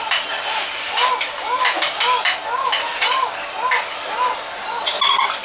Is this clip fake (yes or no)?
no